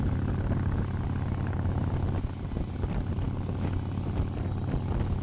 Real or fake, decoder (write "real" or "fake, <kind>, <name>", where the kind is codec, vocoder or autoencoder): real